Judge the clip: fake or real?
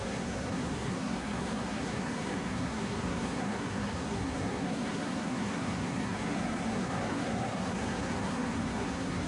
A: fake